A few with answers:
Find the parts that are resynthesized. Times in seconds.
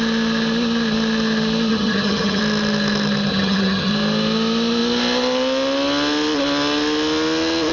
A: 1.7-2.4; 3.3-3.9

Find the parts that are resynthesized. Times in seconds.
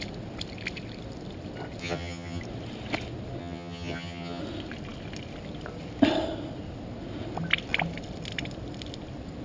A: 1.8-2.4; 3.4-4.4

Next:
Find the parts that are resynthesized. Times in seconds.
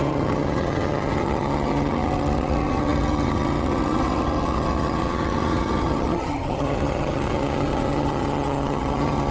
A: 0.0-9.3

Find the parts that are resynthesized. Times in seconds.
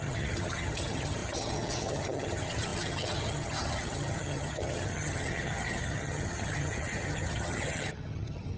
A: 0.0-8.6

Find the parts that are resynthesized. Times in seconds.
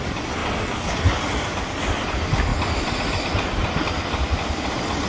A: none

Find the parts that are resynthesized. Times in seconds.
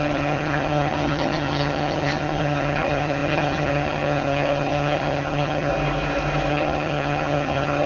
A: 0.0-5.7; 6.5-7.9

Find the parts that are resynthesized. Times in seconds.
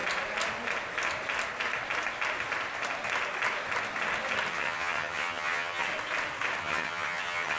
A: 4.5-5.9; 6.6-7.6